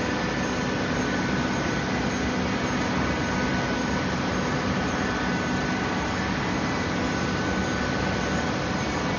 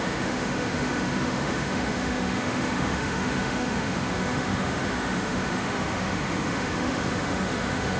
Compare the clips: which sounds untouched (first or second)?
first